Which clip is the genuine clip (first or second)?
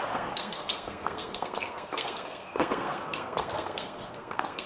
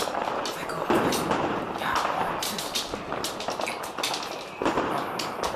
second